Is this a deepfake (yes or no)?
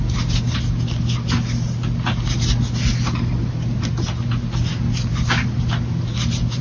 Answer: no